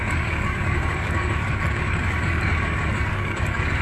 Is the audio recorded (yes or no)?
no